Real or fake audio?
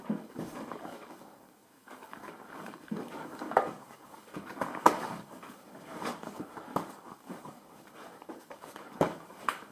fake